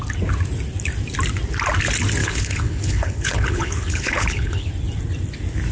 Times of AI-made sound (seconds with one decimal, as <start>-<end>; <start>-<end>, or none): 2.2-4.7